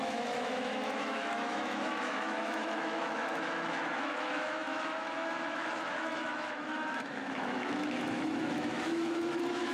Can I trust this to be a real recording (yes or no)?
no